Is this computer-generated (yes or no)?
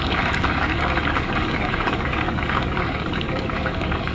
yes